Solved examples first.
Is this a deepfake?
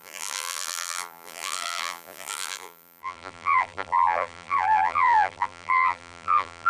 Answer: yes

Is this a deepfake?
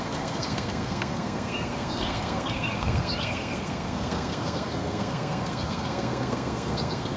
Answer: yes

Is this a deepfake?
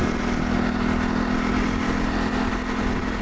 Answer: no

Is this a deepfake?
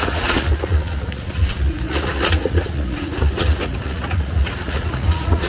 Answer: yes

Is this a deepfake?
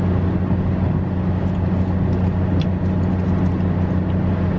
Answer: no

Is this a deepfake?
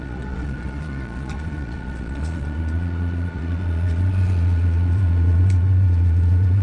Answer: yes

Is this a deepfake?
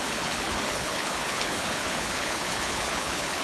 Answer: yes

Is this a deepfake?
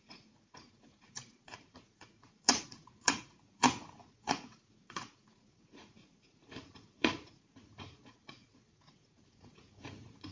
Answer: yes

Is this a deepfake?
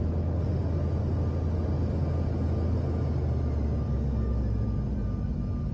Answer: no